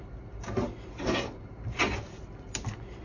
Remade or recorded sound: recorded